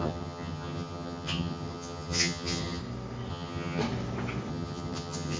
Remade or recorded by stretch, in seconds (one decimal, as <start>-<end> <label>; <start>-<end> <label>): 0.0-2.8 remade; 2.8-3.3 recorded; 3.3-3.8 remade; 3.8-4.5 recorded; 4.5-5.4 remade